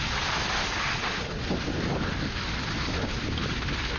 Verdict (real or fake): real